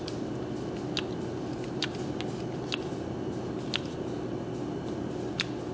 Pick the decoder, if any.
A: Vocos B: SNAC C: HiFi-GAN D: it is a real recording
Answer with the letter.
D